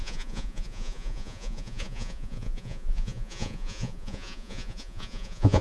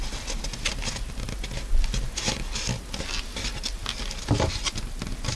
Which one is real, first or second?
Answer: second